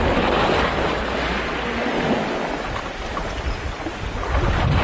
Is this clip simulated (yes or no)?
no